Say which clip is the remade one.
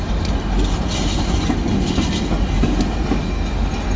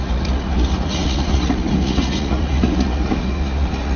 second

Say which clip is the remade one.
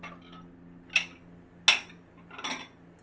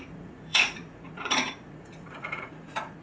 second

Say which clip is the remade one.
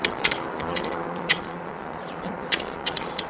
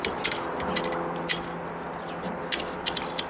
first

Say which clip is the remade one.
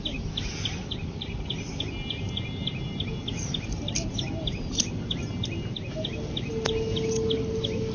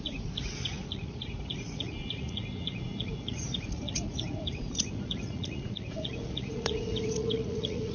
second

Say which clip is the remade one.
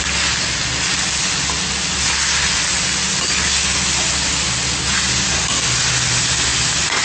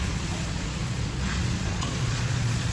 second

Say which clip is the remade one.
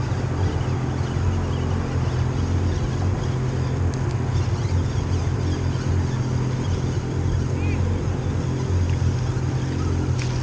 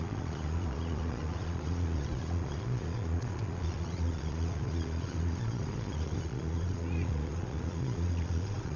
second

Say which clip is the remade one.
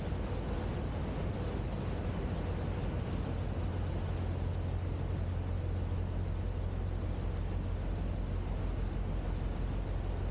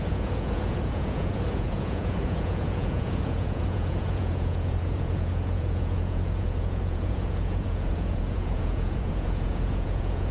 second